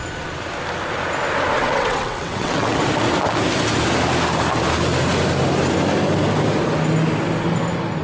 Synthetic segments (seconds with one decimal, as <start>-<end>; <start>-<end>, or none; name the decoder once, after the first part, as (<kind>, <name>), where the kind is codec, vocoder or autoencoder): 1.6-2.8 (vocoder, WaveNeXt)